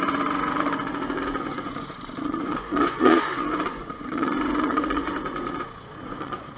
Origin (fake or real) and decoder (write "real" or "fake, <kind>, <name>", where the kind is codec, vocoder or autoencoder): fake, vocoder, Vocos